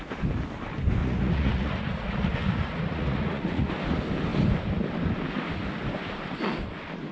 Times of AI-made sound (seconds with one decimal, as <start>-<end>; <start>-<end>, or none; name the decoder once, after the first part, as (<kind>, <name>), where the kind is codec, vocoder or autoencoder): 1.0-3.7 (vocoder, Vocos)